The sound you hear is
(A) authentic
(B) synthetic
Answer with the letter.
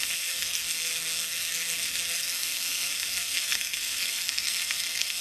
B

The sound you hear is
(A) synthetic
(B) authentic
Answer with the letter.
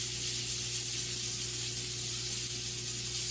B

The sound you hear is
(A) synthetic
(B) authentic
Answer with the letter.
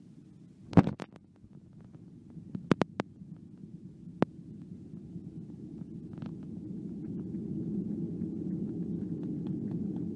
B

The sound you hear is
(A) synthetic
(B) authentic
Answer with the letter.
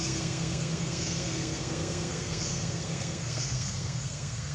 A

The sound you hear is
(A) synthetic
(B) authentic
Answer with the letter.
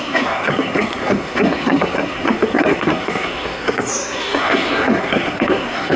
A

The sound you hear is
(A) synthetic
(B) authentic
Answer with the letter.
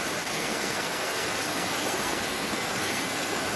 A